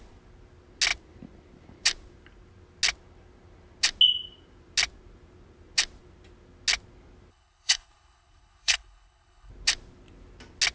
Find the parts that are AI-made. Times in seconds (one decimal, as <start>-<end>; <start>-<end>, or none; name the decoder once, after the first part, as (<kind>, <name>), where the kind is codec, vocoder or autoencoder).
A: 7.3-9.5 (codec, HILCodec)